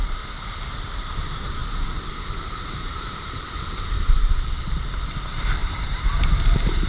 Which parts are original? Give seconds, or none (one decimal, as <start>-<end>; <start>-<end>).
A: 0.0-0.7